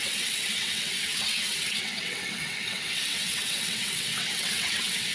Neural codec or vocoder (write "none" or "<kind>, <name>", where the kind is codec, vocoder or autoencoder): vocoder, WaveNeXt